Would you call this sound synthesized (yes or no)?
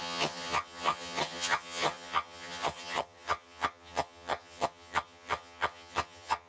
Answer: yes